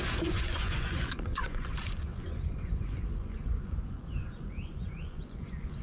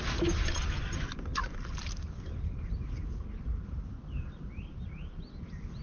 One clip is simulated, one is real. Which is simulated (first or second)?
first